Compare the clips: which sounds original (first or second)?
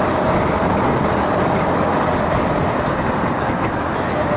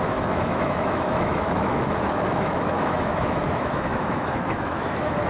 first